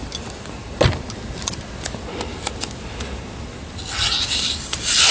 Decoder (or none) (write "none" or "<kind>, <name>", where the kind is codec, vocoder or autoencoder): none